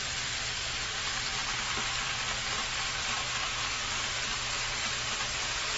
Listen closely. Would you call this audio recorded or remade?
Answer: recorded